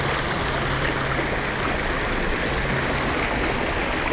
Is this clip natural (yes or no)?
yes